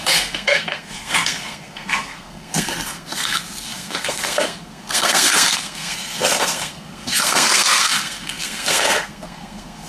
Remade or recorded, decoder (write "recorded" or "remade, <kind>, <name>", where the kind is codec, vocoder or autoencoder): remade, codec, SNAC